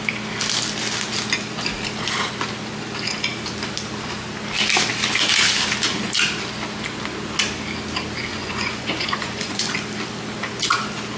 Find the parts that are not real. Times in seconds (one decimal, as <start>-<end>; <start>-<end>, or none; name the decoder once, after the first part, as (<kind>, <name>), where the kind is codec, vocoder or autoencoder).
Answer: 8.3-9.7 (vocoder, Vocos)